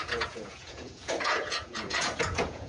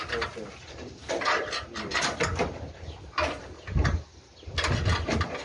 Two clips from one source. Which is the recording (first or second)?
second